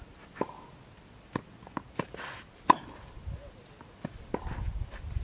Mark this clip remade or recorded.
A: recorded